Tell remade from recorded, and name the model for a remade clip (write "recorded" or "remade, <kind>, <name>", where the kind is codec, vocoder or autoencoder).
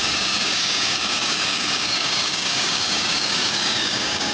remade, codec, DAC